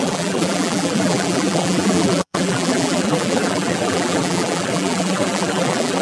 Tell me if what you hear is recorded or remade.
remade